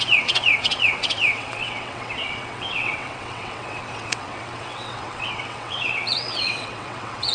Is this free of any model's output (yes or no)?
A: no